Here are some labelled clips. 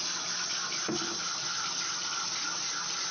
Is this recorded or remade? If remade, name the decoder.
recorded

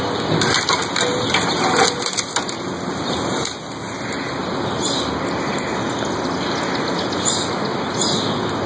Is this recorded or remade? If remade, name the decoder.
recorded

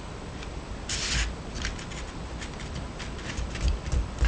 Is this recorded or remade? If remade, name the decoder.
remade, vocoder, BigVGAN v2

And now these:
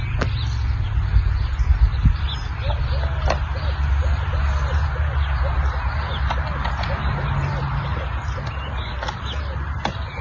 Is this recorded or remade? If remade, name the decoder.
recorded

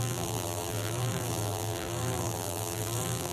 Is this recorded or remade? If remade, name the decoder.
remade, vocoder, BigVGAN v2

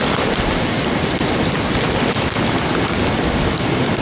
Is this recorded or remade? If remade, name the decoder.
recorded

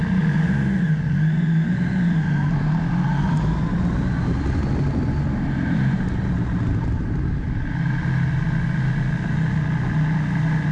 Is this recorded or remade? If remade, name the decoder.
recorded